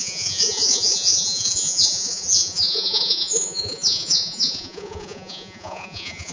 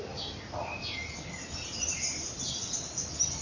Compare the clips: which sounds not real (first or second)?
first